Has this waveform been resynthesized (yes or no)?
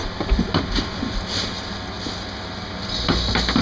no